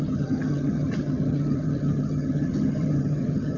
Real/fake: fake